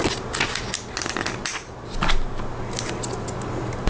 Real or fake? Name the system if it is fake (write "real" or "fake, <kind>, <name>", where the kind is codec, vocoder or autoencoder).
real